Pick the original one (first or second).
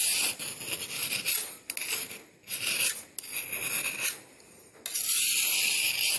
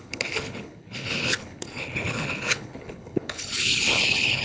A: first